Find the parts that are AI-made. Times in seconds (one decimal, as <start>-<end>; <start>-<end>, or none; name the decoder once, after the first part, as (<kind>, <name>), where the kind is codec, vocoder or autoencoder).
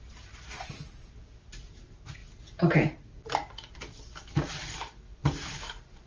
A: none